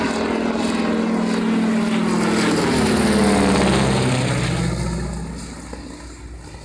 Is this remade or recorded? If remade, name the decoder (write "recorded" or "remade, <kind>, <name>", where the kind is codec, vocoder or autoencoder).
recorded